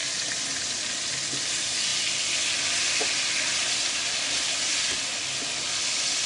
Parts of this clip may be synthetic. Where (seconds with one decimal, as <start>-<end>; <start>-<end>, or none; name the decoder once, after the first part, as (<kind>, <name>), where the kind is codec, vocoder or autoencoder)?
none

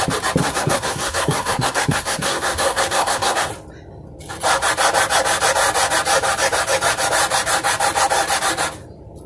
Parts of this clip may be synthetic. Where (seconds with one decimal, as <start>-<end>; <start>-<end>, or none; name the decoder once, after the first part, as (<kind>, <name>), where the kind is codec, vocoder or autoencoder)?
0.4-3.5 (codec, SNAC)

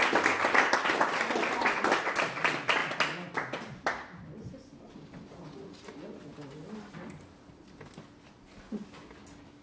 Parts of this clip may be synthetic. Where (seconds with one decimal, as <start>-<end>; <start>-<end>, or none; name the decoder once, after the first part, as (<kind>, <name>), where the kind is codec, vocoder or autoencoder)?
none

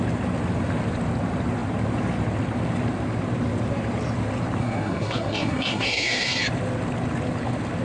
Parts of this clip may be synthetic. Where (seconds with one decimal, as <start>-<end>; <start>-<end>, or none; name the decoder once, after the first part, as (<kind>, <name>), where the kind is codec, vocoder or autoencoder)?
4.6-6.4 (codec, SNAC)

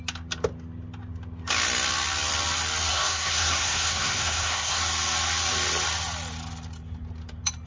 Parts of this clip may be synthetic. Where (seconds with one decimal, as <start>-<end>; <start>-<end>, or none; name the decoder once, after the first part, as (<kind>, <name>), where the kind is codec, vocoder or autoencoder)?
2.9-4.8 (codec, SNAC)

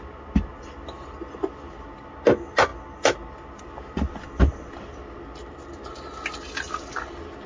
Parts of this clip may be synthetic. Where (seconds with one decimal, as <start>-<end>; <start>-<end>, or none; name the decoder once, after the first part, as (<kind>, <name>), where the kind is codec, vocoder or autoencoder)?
none